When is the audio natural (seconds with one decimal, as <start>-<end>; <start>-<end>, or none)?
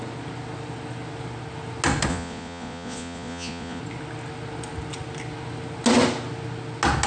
0.0-2.1; 3.8-7.1